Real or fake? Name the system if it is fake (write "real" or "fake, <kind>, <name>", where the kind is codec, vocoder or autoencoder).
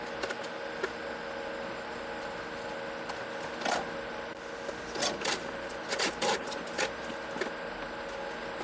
real